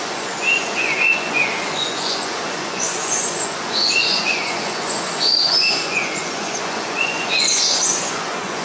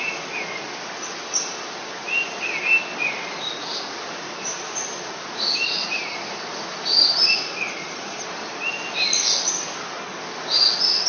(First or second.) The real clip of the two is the second